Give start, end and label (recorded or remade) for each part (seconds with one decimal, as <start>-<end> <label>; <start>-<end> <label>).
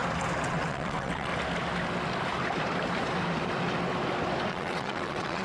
0.0-0.5 recorded; 0.5-1.3 remade; 1.3-4.5 recorded; 4.5-5.4 remade